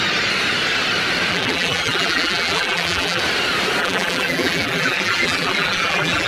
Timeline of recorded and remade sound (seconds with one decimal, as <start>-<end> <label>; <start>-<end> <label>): 0.0-1.3 recorded; 1.3-3.2 remade; 3.2-3.8 recorded; 3.8-6.3 remade